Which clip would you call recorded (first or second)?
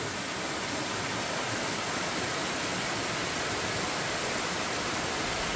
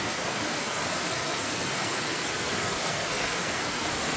first